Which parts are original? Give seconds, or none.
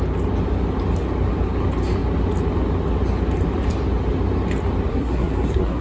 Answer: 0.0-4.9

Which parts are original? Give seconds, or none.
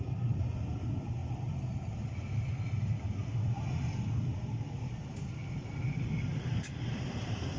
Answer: 0.0-7.6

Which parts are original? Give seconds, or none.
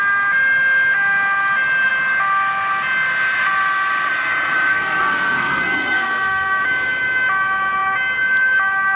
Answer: 0.0-4.7; 6.6-9.0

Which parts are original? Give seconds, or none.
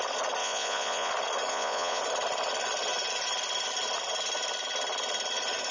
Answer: 0.0-0.4; 1.1-1.5; 2.0-5.7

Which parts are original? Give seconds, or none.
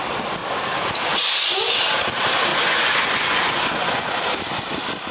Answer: 0.0-2.5; 4.2-5.1